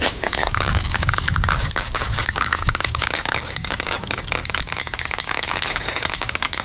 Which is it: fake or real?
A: fake